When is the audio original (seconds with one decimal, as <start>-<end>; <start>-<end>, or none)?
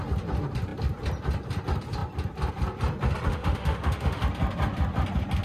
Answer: 0.0-3.3; 4.2-5.4